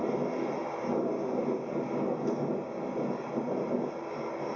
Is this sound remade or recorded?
recorded